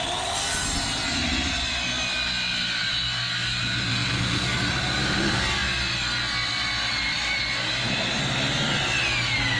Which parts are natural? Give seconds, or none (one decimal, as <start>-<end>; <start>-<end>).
0.0-3.9; 4.7-9.6

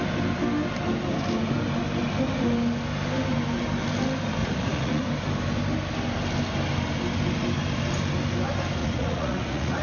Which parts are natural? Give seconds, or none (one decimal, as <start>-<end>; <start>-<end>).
0.0-4.4; 5.0-8.8